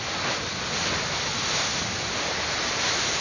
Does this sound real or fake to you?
real